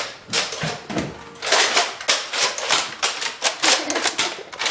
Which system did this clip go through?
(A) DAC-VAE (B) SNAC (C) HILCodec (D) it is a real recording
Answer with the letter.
D